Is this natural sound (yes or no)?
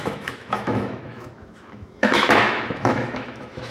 no